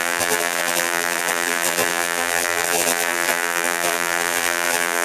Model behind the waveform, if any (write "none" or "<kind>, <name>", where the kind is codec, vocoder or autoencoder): vocoder, BigVGAN v2